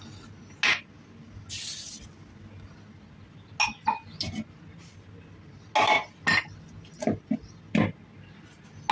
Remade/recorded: recorded